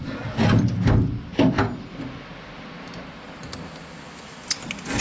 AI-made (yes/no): no